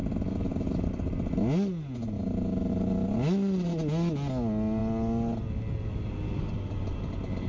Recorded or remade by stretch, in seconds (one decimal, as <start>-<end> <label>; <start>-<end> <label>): 0.0-7.5 recorded